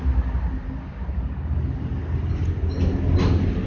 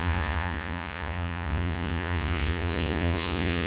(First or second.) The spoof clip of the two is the second